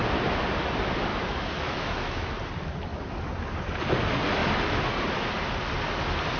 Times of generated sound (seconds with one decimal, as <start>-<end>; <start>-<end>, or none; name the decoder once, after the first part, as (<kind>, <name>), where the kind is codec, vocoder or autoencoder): 1.1-2.3 (autoencoder, DAC-VAE)